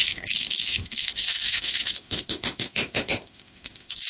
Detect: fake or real fake